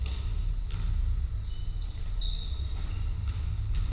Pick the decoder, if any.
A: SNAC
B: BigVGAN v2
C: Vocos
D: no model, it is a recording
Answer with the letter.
D